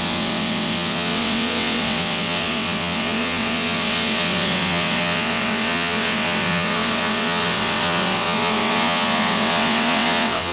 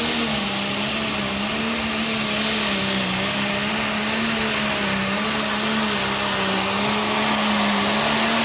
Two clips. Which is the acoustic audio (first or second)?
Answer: second